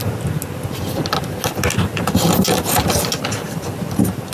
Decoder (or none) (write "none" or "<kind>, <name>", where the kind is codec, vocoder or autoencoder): none